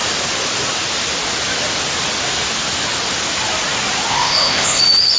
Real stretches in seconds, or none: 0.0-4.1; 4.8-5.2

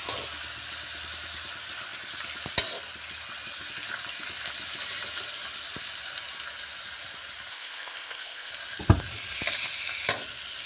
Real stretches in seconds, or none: 0.0-7.5; 8.5-10.7